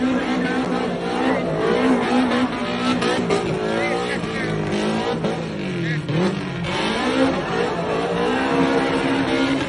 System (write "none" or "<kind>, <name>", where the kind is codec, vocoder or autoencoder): none